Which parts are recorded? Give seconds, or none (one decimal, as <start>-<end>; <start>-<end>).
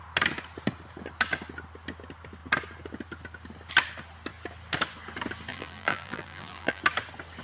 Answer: 0.0-5.5; 6.8-7.4